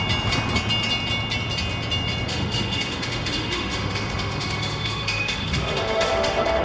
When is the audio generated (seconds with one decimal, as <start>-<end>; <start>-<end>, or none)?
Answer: 2.3-6.6